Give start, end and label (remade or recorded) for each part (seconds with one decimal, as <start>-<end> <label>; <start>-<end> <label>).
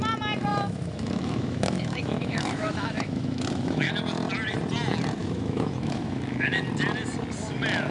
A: 0.0-0.5 recorded; 0.5-3.9 remade; 3.9-5.2 recorded; 5.2-6.6 remade; 6.6-7.9 recorded